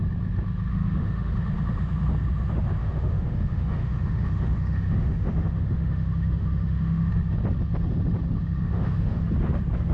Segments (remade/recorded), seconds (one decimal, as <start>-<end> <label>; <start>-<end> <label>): 0.0-0.7 recorded; 0.7-1.3 remade; 1.3-2.8 recorded; 2.8-7.1 remade; 7.1-8.6 recorded; 8.6-9.3 remade; 9.3-9.9 recorded